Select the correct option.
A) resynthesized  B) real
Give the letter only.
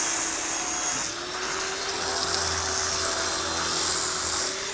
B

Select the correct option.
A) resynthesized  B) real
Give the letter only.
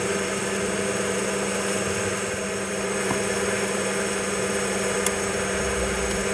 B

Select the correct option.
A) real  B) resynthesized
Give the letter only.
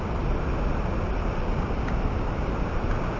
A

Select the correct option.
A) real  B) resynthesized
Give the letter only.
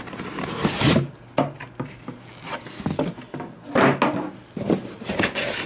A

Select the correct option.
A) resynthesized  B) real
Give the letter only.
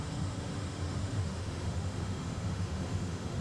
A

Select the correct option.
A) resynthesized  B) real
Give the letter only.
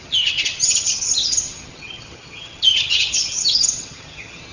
A